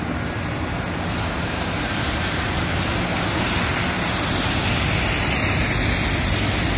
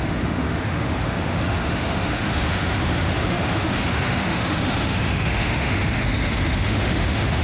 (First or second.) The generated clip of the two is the second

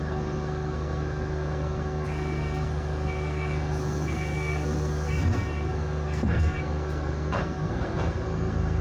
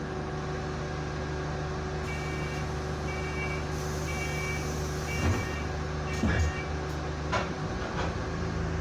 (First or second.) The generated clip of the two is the first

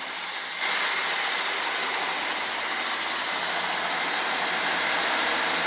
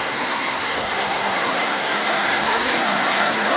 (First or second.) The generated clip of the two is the second